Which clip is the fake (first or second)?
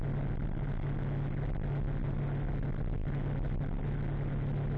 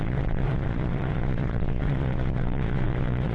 second